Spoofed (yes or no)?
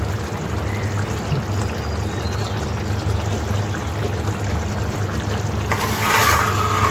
no